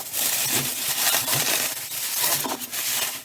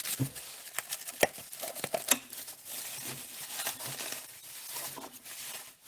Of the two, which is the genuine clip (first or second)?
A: second